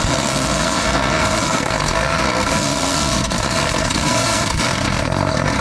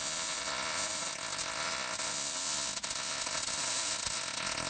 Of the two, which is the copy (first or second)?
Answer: first